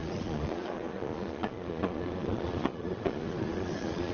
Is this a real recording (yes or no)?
no